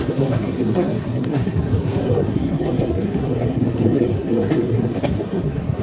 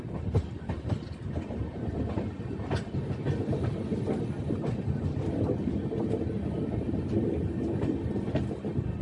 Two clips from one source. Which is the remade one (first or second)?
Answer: first